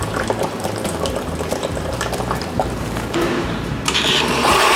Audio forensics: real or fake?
fake